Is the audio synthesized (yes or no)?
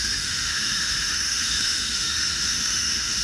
yes